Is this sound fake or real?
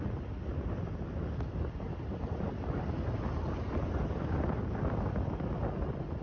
real